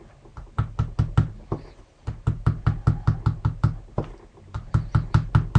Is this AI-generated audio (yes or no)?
no